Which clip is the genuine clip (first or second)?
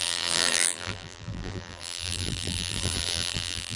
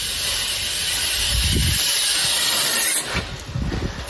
second